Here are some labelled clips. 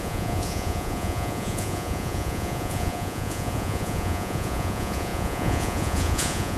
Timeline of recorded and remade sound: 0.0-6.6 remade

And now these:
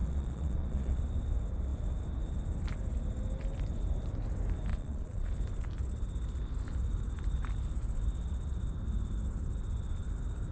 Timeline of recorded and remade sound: 0.0-1.0 remade; 1.0-4.7 recorded; 4.7-5.3 remade; 5.3-10.5 recorded

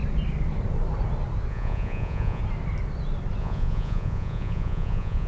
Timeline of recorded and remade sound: 0.0-1.5 recorded; 1.5-2.4 remade; 2.4-3.4 recorded; 3.4-5.3 remade